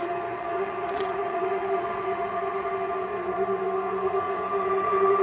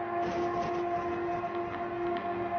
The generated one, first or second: first